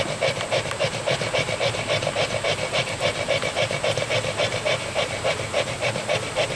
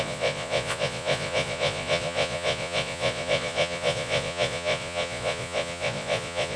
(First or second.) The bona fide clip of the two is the first